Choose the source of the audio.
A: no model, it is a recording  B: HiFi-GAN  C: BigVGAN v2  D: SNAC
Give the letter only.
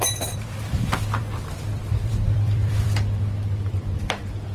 C